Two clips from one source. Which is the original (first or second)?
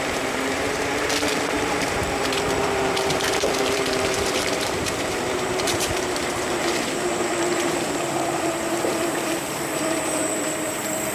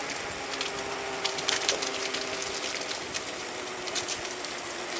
second